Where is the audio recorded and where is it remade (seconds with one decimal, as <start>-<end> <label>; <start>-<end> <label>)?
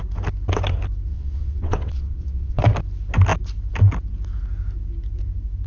0.0-1.1 recorded; 1.1-2.6 remade; 2.6-5.7 recorded